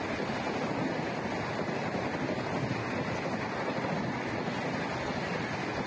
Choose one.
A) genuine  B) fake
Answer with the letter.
A